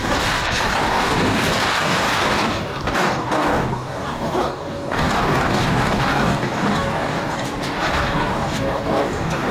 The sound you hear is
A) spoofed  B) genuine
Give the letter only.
A